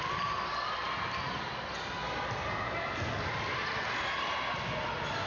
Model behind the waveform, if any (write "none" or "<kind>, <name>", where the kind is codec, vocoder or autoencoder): none